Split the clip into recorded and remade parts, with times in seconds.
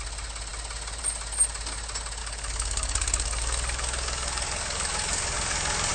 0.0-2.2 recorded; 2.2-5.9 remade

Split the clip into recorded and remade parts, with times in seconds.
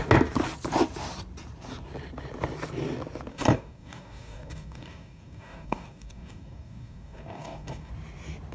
0.0-3.3 recorded; 3.3-7.9 remade; 7.9-8.5 recorded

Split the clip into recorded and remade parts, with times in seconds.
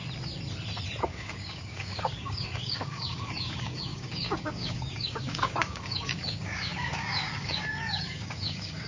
0.0-1.0 recorded; 1.0-8.9 remade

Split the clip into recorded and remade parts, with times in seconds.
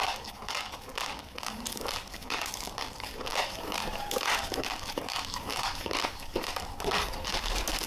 0.0-7.9 remade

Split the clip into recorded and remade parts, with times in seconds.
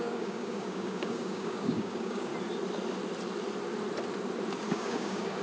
0.0-2.3 remade; 2.3-4.7 recorded; 4.7-5.4 remade